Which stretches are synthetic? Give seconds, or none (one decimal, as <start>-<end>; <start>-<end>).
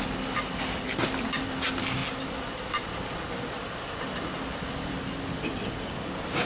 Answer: none